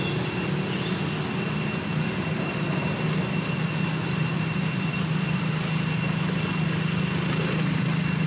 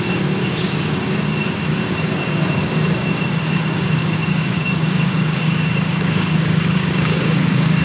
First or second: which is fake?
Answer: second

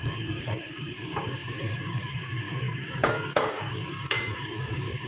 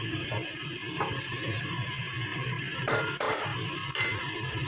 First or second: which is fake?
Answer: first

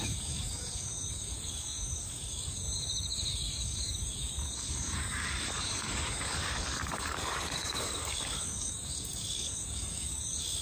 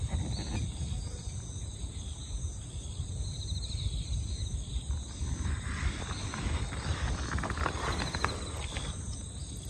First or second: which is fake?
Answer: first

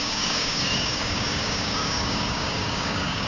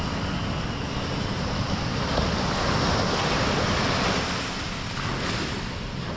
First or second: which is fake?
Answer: first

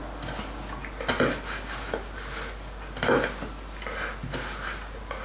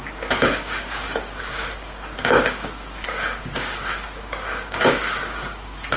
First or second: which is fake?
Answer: second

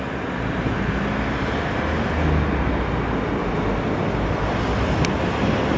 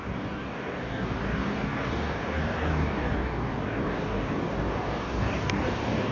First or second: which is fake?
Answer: second